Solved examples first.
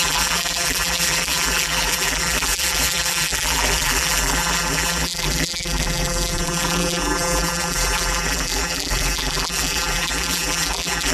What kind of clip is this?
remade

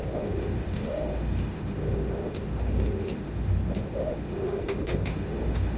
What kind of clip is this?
remade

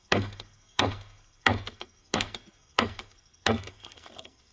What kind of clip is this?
remade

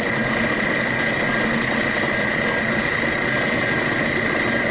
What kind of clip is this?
recorded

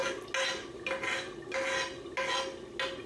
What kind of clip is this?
recorded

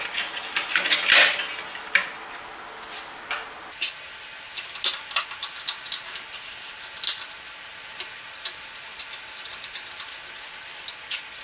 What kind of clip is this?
recorded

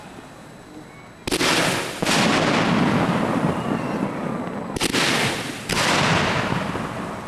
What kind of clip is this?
recorded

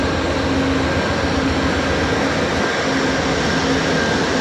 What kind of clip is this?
recorded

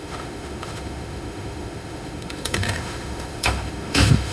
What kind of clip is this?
remade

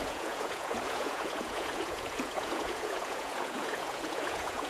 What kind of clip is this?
remade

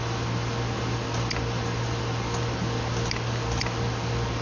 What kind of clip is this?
recorded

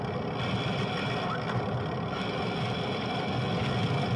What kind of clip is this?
recorded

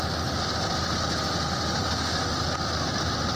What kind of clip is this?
recorded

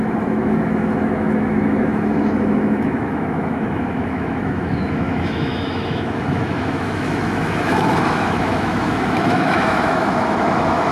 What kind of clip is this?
remade